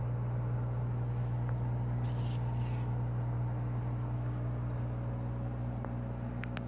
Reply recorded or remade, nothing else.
recorded